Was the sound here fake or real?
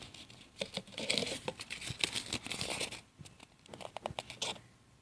real